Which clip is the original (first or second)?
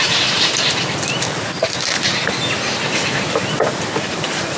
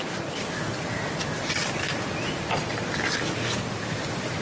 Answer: first